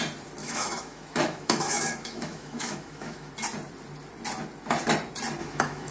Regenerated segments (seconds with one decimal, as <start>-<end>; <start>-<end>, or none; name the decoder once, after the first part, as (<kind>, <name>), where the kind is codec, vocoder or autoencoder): 0.4-3.3 (autoencoder, DAC-VAE); 5.4-5.9